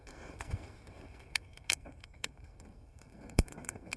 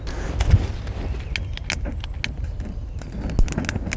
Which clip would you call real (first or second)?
second